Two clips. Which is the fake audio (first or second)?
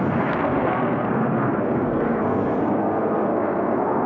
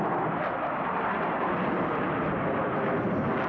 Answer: first